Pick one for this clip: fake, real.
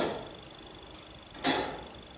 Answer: real